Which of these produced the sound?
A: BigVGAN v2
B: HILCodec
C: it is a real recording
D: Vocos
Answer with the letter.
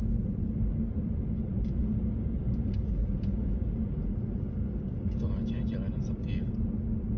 C